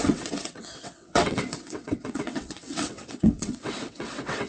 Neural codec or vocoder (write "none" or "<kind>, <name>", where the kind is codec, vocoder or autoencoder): vocoder, WaveNeXt